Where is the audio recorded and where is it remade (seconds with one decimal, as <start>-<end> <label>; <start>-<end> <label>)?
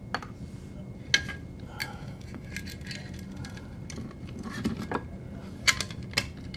0.0-1.8 recorded; 1.8-2.5 remade; 2.5-6.6 recorded